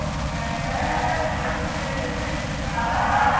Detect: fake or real real